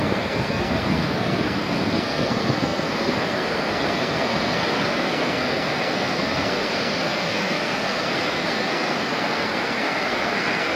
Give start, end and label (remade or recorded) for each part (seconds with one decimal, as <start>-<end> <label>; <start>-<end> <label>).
0.0-10.8 remade